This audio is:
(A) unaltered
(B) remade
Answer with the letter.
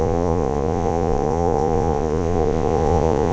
B